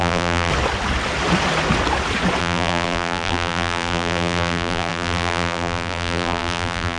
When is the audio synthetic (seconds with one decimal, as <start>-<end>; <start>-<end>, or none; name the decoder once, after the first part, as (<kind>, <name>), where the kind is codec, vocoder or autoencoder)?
0.0-0.5 (vocoder, BigVGAN v2); 2.4-7.0